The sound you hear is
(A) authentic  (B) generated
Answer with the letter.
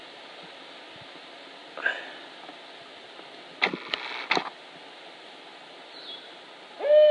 A